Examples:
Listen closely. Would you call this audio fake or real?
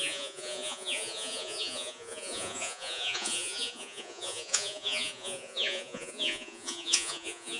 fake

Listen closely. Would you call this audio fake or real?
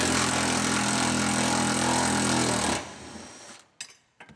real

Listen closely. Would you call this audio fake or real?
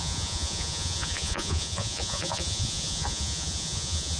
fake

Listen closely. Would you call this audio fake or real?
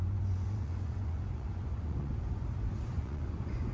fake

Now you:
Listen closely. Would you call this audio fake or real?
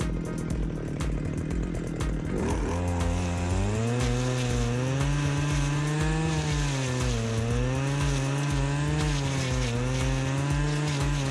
real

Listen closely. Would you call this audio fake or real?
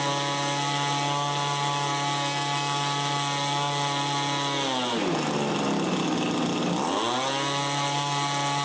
real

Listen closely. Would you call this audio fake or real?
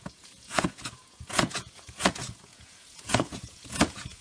fake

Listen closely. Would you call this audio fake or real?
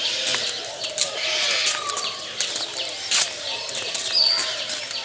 real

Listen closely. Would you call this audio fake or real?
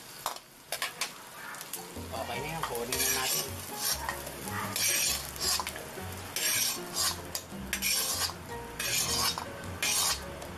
real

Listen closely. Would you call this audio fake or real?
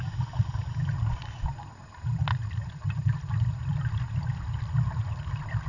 real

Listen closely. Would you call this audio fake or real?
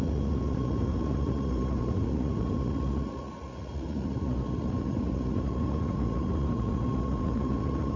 fake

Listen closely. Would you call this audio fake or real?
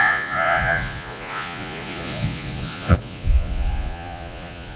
fake